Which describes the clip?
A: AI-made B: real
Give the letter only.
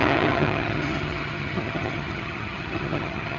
A